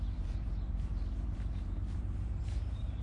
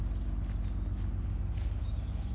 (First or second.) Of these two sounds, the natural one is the second